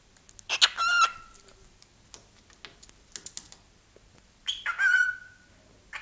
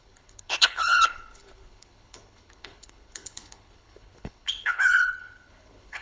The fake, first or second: second